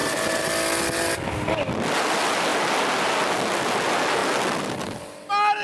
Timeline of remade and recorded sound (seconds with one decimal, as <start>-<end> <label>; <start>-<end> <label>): 0.0-5.6 recorded